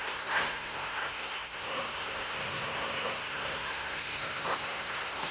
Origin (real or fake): fake